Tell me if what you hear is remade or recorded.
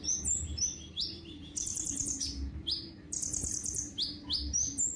remade